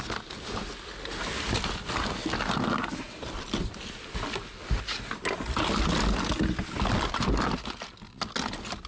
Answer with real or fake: real